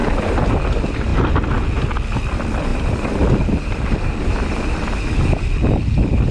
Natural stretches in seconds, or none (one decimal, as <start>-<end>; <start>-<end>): 0.0-0.7; 1.1-2.2